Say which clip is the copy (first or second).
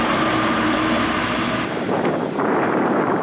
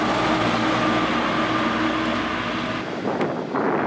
first